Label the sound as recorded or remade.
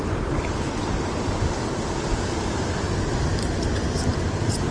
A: recorded